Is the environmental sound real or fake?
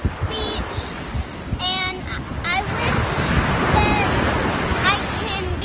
real